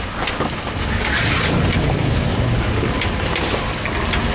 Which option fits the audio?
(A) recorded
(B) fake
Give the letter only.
A